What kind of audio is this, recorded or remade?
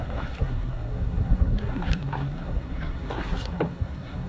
remade